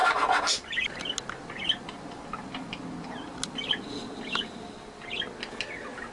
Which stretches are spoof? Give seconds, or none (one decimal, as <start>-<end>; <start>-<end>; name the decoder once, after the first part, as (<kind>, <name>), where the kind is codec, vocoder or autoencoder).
none